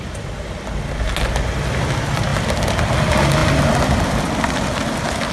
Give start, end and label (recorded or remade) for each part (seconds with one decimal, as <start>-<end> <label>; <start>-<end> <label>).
0.0-5.3 recorded